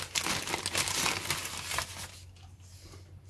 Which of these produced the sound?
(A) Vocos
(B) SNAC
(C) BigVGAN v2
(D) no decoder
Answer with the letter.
D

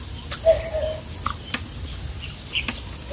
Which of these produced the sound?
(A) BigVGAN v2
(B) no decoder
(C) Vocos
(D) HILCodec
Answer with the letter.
B